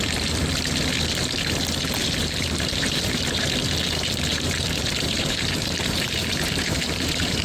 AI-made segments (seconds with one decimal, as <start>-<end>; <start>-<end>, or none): 2.0-3.2; 4.3-7.4